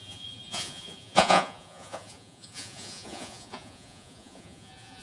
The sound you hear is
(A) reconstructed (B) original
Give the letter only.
A